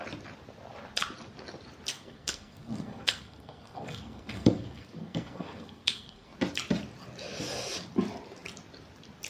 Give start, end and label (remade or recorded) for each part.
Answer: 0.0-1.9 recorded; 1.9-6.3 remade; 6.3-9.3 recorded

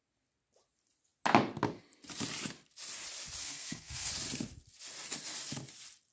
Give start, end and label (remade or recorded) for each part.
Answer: 0.0-3.4 recorded; 3.4-4.1 remade; 4.1-6.1 recorded

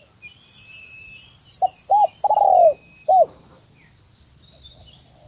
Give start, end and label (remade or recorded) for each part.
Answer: 0.0-5.3 recorded